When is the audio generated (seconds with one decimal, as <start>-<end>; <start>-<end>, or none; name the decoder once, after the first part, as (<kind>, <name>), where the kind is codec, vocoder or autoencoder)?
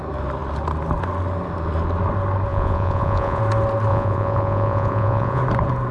2.5-3.4 (vocoder, Vocos); 3.9-5.4